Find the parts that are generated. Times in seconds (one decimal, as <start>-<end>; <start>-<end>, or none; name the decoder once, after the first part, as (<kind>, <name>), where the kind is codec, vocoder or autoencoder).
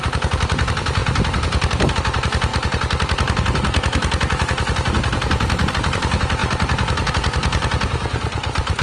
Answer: 0.0-1.0 (vocoder, BigVGAN v2); 1.9-2.5; 5.7-8.8